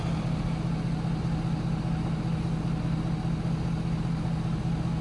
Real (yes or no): yes